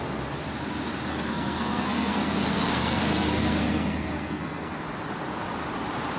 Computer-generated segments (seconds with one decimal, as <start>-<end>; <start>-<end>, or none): 1.1-4.8